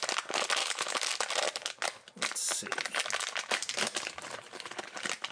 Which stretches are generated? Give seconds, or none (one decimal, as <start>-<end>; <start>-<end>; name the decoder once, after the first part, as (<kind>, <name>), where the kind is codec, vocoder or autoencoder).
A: 0.6-1.1 (autoencoder, DAC-VAE)